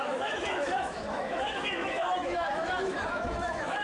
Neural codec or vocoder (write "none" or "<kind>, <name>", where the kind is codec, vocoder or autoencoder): autoencoder, DAC-VAE